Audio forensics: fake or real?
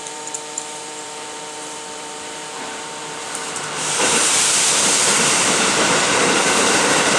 fake